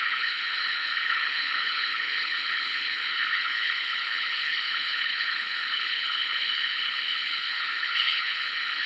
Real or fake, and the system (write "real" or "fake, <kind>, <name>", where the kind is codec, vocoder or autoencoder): fake, codec, HILCodec